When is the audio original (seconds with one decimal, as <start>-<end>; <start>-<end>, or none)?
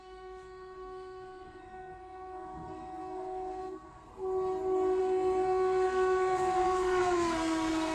4.1-5.0